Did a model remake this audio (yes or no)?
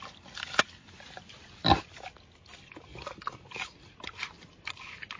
no